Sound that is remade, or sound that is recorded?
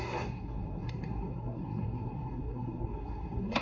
remade